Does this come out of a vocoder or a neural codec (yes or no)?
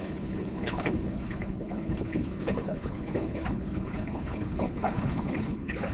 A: yes